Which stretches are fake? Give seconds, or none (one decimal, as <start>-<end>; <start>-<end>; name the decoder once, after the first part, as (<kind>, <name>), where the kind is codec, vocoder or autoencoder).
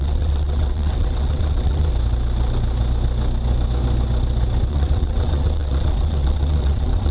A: 0.0-1.9 (vocoder, WaveNeXt); 4.7-7.1